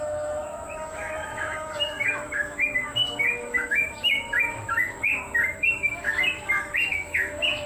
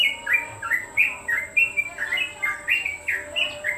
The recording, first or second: second